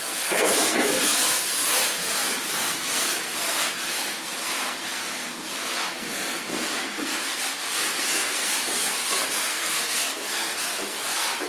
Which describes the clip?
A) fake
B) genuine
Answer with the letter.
A